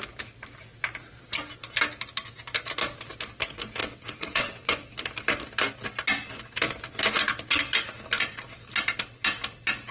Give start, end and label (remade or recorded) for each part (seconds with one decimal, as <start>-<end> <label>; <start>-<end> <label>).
0.0-3.8 recorded; 3.8-4.9 remade; 4.9-9.9 recorded

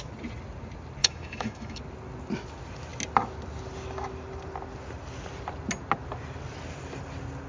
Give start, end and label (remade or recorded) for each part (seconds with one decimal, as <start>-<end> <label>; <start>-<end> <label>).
0.0-1.0 recorded; 1.0-1.8 remade; 1.8-7.5 recorded

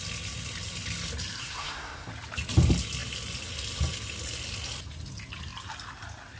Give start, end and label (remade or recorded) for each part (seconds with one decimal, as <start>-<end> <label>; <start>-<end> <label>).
0.0-1.4 recorded; 1.4-2.1 remade; 2.1-6.4 recorded

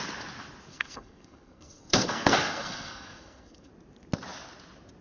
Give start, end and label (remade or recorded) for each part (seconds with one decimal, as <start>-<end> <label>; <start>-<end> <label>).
0.0-0.7 recorded; 0.7-3.7 remade; 3.7-5.0 recorded